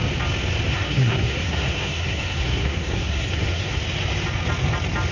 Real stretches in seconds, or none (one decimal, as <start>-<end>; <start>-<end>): 0.0-0.7; 3.8-5.1